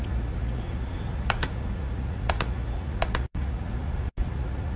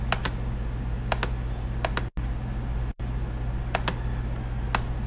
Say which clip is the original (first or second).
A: second